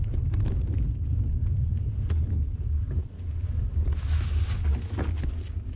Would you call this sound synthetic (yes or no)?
no